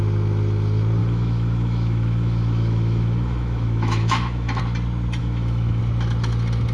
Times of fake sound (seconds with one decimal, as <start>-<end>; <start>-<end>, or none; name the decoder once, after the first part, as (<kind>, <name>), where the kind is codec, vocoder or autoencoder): 1.0-4.6 (autoencoder, DAC-VAE); 5.2-5.8